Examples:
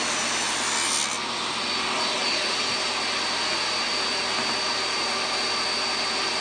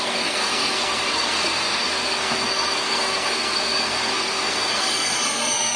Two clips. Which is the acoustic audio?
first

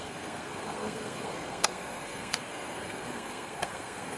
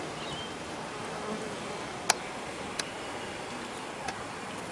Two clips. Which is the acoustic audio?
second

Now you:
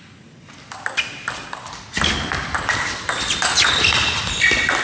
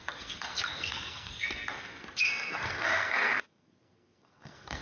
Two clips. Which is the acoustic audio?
first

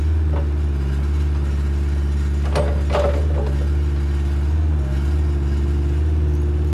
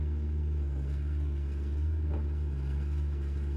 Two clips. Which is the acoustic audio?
first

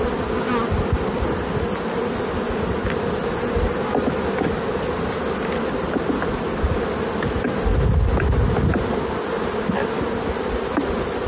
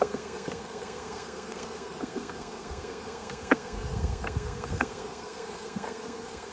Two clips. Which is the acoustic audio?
first